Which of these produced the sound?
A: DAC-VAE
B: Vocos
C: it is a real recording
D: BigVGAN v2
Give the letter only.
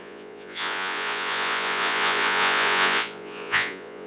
B